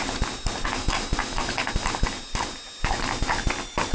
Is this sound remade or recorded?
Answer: recorded